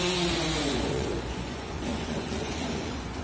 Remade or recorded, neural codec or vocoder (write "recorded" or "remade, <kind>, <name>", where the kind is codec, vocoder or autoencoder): remade, vocoder, Vocos